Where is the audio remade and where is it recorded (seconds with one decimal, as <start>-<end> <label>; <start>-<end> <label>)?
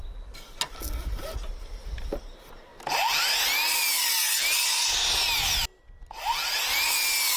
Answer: 0.0-7.4 recorded